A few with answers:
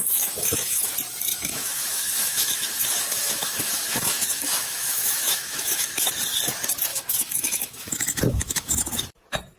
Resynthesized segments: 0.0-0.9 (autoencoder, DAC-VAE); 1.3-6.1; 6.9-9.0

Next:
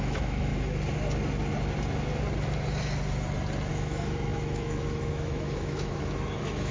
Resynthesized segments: 0.0-0.5 (autoencoder, DAC-VAE); 3.7-6.7

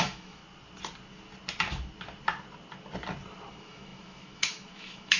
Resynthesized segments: 0.0-0.4 (autoencoder, DAC-VAE); 3.5-5.2

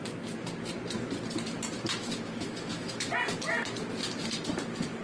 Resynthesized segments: 2.0-3.1 (autoencoder, DAC-VAE)